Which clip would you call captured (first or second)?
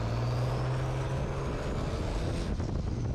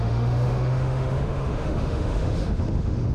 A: first